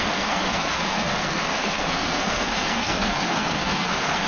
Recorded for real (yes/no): no